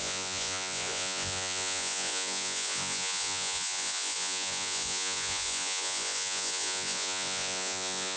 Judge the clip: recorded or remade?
remade